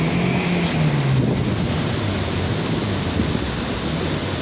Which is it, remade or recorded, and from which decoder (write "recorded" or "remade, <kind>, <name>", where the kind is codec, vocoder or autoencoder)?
recorded